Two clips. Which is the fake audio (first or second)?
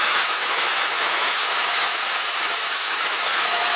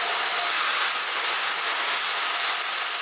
first